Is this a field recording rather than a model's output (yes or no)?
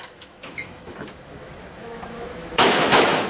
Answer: no